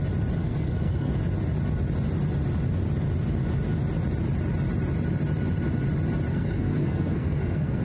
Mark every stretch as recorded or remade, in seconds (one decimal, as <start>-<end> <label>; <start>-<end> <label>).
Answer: 0.0-0.4 recorded; 0.4-1.1 remade; 1.1-6.3 recorded; 6.3-7.8 remade

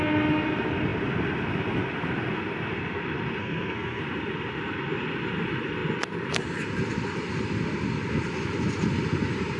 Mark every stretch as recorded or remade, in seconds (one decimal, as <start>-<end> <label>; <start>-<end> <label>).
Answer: 0.0-3.4 recorded; 3.4-4.0 remade; 4.0-9.6 recorded

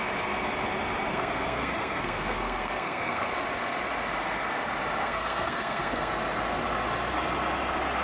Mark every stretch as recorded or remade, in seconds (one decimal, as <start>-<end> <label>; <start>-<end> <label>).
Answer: 0.0-1.1 recorded; 1.1-3.3 remade; 3.3-5.0 recorded; 5.0-6.1 remade; 6.1-8.0 recorded

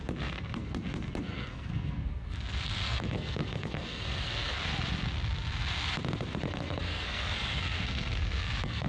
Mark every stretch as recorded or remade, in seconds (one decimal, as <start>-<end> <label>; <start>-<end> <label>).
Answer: 0.0-4.6 remade; 4.6-6.4 recorded; 6.4-8.9 remade

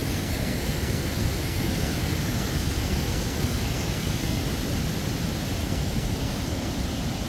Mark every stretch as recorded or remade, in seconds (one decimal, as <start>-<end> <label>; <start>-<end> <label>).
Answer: 0.0-4.4 remade; 4.4-5.6 recorded; 5.6-6.7 remade; 6.7-7.3 recorded

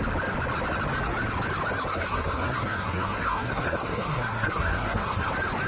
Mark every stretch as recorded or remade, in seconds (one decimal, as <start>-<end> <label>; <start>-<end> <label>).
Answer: 0.0-1.9 recorded; 1.9-5.3 remade; 5.3-5.7 recorded

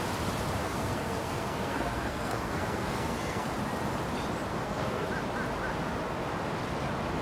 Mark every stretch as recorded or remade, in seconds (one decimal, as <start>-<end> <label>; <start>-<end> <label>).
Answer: 0.0-0.6 recorded; 0.6-3.5 remade; 3.5-4.5 recorded; 4.5-5.1 remade; 5.1-7.2 recorded